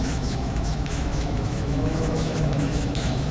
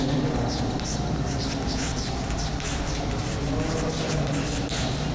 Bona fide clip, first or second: second